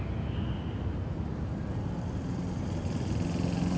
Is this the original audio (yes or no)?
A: yes